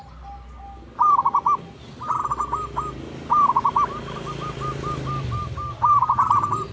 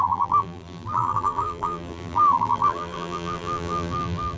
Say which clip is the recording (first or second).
first